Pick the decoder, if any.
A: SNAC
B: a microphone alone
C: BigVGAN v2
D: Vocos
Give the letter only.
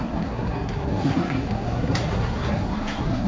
A